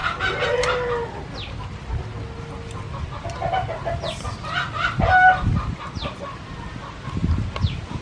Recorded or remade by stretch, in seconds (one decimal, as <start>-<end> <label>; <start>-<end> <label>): 0.0-8.0 recorded